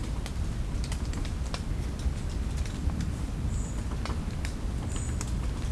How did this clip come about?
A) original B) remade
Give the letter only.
A